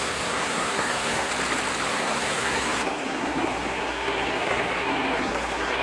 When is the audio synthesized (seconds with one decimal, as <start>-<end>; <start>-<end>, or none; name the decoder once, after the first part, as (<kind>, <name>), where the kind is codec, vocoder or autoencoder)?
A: 0.0-1.3 (codec, SNAC); 1.9-5.8